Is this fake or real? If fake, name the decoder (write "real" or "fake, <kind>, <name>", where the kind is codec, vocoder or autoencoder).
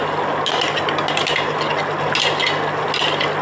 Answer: real